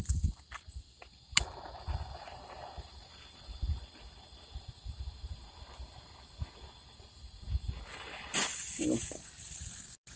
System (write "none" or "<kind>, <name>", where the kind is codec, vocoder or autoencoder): none